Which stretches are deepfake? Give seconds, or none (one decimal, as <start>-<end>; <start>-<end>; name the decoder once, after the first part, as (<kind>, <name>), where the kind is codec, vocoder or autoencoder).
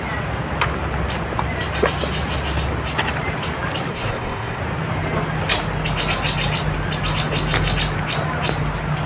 3.9-4.6 (codec, SNAC)